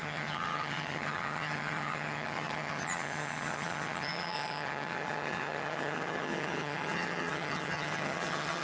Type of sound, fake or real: fake